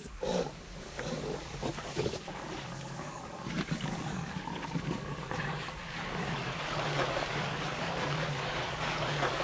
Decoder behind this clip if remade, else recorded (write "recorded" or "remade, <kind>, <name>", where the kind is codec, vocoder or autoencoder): remade, codec, DAC